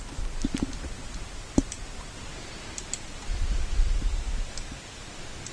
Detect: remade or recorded recorded